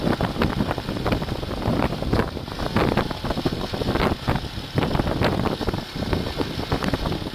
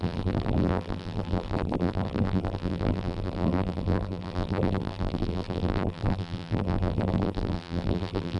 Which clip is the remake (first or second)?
second